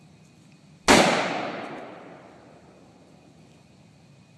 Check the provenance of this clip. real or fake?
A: real